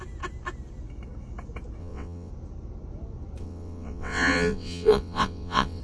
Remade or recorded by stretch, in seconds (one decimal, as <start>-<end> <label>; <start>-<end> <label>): 0.0-1.8 recorded; 1.8-2.3 remade; 2.3-3.4 recorded; 3.4-5.8 remade